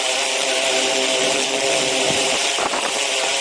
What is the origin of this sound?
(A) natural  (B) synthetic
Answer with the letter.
B